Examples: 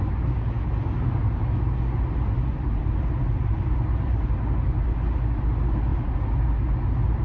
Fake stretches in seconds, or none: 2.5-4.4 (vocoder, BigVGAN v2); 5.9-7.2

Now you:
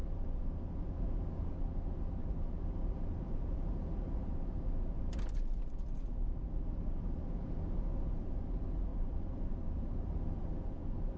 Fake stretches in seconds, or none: 0.0-0.9 (vocoder, BigVGAN v2); 2.2-7.3; 8.9-11.2

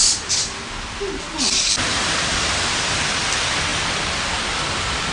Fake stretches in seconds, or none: 0.0-0.6 (vocoder, BigVGAN v2); 1.9-2.9; 3.7-5.1